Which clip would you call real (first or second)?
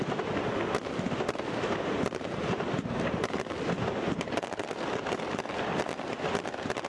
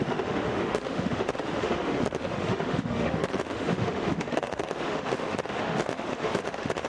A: first